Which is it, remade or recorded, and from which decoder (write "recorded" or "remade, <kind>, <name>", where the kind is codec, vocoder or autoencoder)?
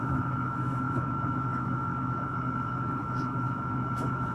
remade, autoencoder, DAC-VAE